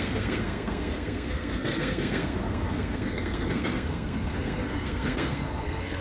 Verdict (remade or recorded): remade